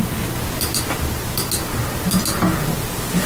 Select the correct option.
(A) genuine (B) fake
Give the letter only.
A